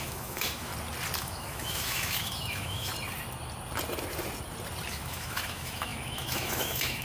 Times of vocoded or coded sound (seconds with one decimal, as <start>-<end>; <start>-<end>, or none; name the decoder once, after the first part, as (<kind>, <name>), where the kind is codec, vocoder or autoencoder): 0.0-0.7 (autoencoder, DAC-VAE); 1.2-2.9; 4.9-7.0

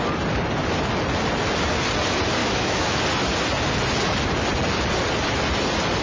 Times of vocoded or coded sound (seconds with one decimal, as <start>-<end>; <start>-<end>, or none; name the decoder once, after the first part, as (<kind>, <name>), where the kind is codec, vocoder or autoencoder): 2.4-3.0 (autoencoder, DAC-VAE)

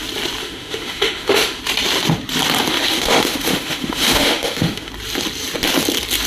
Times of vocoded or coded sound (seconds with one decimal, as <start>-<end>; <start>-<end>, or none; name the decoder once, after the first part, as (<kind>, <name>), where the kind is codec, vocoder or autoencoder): 0.4-1.6 (autoencoder, DAC-VAE); 2.7-4.9

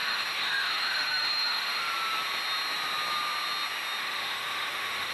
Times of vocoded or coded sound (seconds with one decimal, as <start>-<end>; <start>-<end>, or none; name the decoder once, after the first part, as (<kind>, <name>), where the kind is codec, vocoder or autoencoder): 0.0-1.9 (autoencoder, DAC-VAE); 4.0-5.1

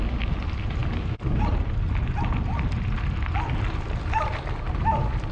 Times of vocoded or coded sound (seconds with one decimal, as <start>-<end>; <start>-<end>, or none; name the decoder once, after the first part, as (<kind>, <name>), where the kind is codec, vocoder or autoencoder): none

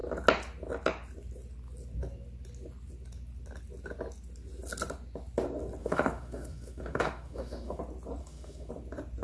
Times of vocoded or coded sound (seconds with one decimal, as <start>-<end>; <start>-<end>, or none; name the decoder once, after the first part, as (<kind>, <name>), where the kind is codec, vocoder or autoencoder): 5.8-7.8 (autoencoder, DAC-VAE); 8.2-8.7

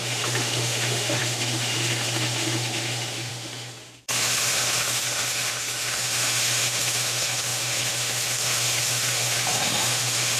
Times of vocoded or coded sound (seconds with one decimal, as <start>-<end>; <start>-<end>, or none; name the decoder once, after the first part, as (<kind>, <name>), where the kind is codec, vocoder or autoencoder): 0.0-10.4 (autoencoder, DAC-VAE)

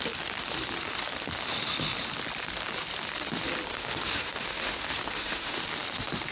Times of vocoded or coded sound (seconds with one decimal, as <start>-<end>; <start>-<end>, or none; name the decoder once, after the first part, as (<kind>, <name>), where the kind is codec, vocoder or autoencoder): 3.7-5.6 (autoencoder, DAC-VAE)